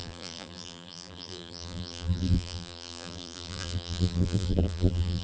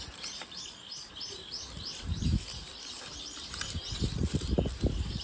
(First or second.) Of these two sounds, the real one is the second